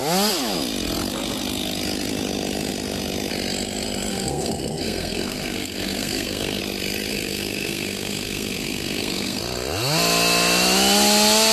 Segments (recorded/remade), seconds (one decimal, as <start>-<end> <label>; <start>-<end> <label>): 0.0-4.1 recorded; 4.1-6.6 remade; 6.6-7.1 recorded; 7.1-9.4 remade; 9.4-11.5 recorded